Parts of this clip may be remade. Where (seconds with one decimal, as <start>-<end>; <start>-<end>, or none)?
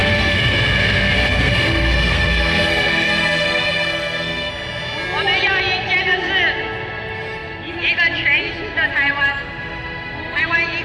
0.0-4.5